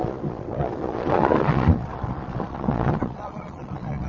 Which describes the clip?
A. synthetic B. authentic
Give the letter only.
A